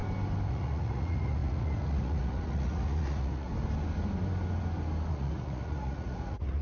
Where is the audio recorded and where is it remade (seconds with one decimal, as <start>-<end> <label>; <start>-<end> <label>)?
0.0-0.5 recorded; 0.5-3.5 remade; 3.5-5.1 recorded; 5.1-6.6 remade